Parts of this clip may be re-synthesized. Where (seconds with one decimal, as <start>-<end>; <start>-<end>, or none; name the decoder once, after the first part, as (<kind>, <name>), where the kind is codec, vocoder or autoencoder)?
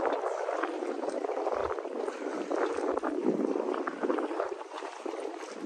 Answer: none